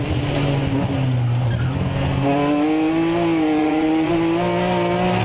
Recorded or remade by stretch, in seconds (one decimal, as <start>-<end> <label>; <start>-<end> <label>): 0.0-3.6 recorded; 3.6-4.1 remade; 4.1-5.2 recorded

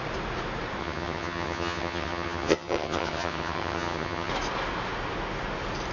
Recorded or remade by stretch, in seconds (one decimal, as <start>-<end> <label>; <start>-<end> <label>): 0.0-0.8 recorded; 0.8-4.3 remade; 4.3-5.9 recorded

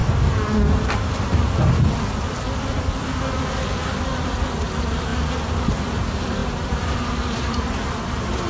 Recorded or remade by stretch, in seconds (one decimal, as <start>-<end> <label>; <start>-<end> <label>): 0.0-6.4 recorded; 6.4-7.9 remade; 7.9-8.5 recorded

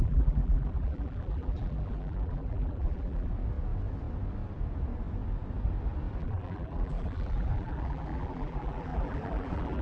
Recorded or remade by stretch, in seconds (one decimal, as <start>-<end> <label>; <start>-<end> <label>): 0.0-3.3 remade; 3.3-6.2 recorded; 6.2-9.8 remade